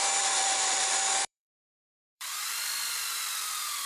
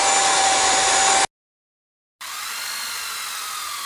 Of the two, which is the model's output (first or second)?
first